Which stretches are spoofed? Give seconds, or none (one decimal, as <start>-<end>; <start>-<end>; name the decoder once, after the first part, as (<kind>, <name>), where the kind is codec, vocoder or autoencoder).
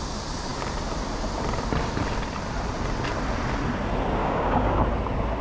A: 4.2-4.8 (codec, DAC)